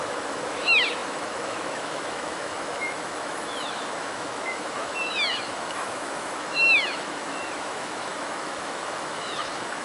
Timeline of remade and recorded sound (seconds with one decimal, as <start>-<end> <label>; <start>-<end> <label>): 0.0-9.8 remade